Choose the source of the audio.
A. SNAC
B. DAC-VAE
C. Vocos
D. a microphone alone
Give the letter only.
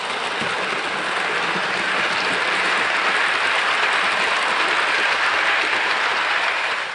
D